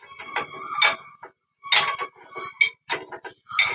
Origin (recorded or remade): recorded